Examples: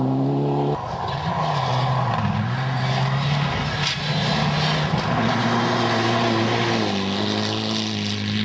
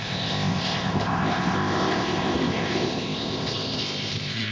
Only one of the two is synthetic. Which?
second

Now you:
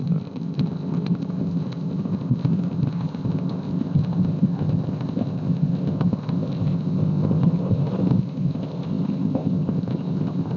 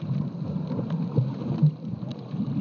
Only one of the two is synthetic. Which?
first